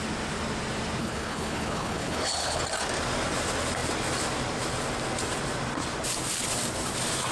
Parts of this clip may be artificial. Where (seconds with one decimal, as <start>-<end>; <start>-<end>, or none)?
1.0-2.6

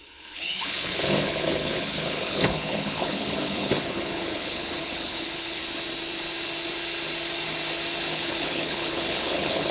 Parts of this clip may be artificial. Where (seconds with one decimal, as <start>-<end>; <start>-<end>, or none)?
0.0-5.6; 8.1-9.7

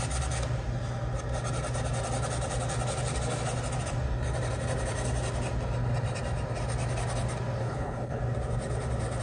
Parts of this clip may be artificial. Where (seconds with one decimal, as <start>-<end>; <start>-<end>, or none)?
7.6-8.2